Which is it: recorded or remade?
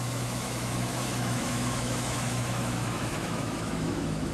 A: remade